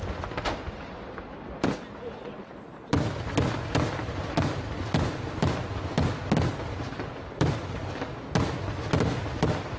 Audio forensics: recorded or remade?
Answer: recorded